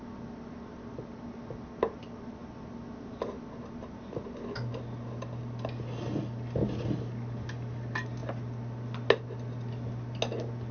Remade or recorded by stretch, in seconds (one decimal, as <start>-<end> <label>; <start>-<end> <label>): 0.0-10.7 recorded